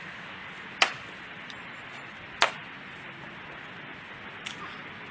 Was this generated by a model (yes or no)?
no